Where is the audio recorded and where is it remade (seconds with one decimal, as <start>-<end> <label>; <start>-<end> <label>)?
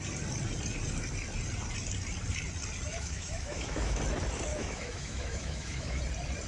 0.0-2.9 recorded; 2.9-4.0 remade; 4.0-4.5 recorded; 4.5-6.0 remade; 6.0-6.5 recorded